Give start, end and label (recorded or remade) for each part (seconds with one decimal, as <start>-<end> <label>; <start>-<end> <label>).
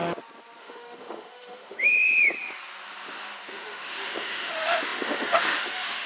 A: 0.0-0.6 recorded; 0.6-1.9 remade; 1.9-3.5 recorded; 3.5-6.1 remade